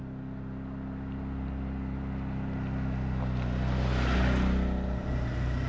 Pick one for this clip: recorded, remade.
recorded